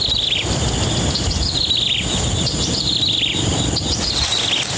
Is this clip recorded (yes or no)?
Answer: yes